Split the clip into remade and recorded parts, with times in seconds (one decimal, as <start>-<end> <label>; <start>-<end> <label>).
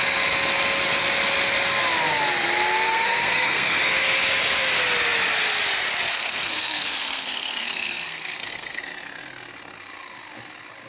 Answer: 0.0-2.9 recorded; 2.9-3.8 remade; 3.8-6.1 recorded; 6.1-8.8 remade; 8.8-10.9 recorded